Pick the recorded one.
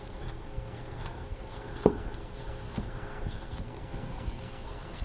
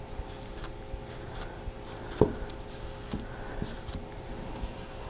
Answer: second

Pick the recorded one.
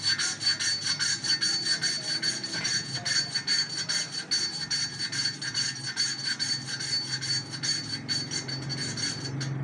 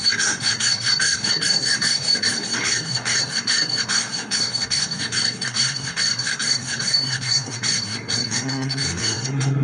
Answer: first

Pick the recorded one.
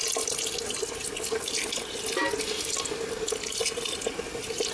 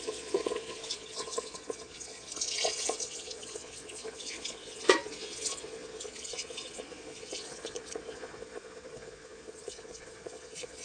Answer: first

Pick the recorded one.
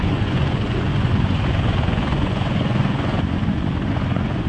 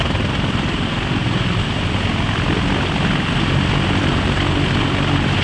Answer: second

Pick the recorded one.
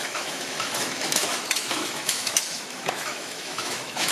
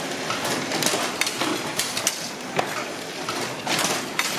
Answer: second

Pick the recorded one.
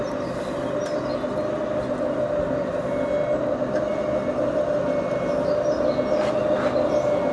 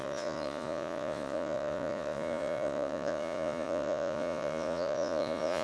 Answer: first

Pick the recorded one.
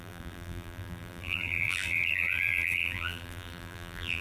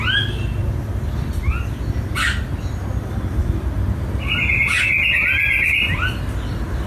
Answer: second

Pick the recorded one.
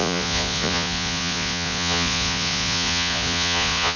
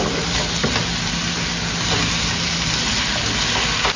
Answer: second